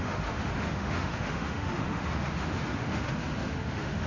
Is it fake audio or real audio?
fake